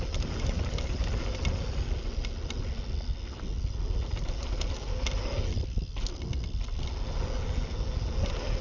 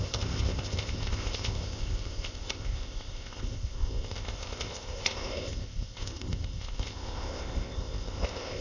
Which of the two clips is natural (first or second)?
first